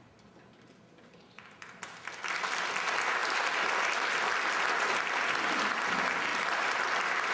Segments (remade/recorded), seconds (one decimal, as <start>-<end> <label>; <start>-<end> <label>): 0.0-3.2 recorded; 3.2-4.3 remade; 4.3-6.3 recorded; 6.3-7.3 remade